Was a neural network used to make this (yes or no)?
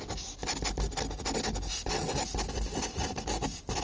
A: no